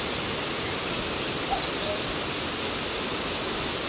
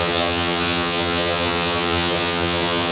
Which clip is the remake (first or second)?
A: second